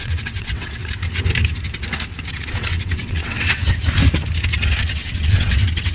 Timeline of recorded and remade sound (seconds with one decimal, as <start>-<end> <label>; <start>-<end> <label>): 0.0-0.8 remade; 0.8-2.3 recorded; 2.3-3.6 remade; 3.6-4.8 recorded; 4.8-5.9 remade